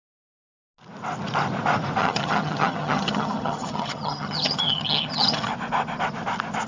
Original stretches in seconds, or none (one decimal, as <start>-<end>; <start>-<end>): 0.0-2.0; 5.5-6.7